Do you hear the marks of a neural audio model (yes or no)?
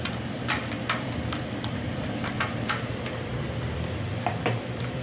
yes